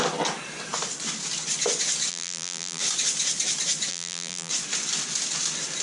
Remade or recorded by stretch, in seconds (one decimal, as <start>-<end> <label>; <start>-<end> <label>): 0.0-2.1 recorded; 2.1-2.8 remade; 2.8-3.9 recorded; 3.9-4.5 remade; 4.5-5.8 recorded